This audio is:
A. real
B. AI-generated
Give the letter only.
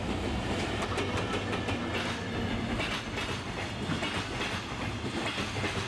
A